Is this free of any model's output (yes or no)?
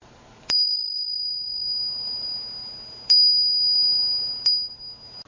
no